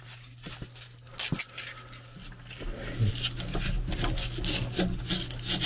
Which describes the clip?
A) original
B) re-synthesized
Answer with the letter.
A